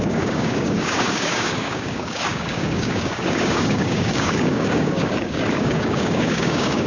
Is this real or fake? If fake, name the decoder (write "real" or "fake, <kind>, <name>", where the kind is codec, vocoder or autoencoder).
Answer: fake, codec, DAC